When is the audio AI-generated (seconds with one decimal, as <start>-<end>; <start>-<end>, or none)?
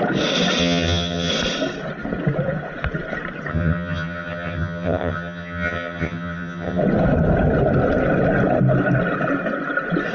0.6-1.3; 3.5-6.8